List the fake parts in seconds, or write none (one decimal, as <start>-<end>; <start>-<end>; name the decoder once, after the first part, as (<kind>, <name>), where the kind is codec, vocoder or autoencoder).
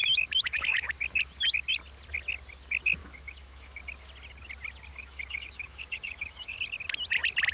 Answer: 0.0-0.9 (autoencoder, DAC-VAE); 3.0-3.8; 4.9-6.6